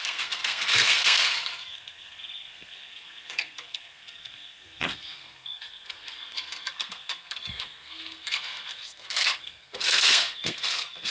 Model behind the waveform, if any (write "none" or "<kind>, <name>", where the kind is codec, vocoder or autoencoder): codec, SNAC